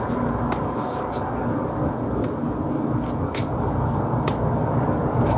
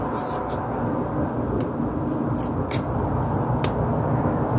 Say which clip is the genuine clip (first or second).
second